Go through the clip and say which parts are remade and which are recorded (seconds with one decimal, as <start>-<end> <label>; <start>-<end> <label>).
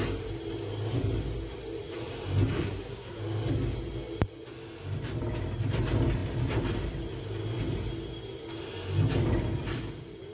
0.0-2.5 recorded; 2.5-3.2 remade; 3.2-10.3 recorded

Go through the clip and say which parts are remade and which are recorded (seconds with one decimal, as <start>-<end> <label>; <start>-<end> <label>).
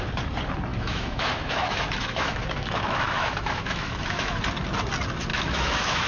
0.0-0.7 recorded; 0.7-4.4 remade; 4.4-5.3 recorded; 5.3-6.1 remade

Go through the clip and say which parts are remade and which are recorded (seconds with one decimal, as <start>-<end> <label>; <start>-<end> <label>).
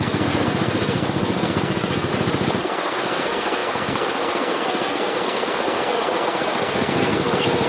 0.0-2.1 remade; 2.1-2.6 recorded; 2.6-7.7 remade